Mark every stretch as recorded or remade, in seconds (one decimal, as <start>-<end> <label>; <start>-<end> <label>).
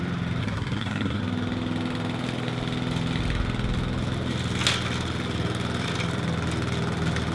0.0-0.4 recorded; 0.4-1.2 remade; 1.2-7.3 recorded